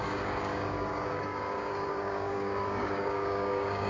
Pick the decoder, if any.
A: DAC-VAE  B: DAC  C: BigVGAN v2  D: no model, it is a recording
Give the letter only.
B